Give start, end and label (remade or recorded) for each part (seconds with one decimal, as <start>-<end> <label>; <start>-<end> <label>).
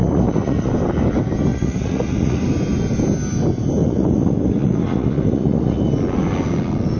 0.0-0.7 remade; 0.7-1.5 recorded; 1.5-2.4 remade; 2.4-3.8 recorded; 3.8-5.9 remade; 5.9-7.0 recorded